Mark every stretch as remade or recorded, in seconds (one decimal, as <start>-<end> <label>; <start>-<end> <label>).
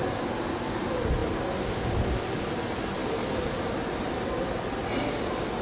0.0-5.6 recorded